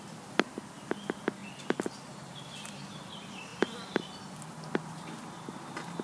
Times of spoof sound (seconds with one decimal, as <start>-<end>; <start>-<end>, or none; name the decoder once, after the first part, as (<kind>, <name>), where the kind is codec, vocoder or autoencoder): 0.0-1.4 (vocoder, BigVGAN v2); 2.0-6.0